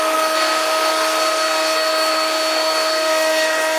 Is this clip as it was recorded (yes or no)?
no